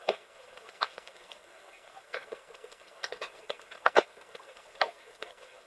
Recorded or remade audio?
remade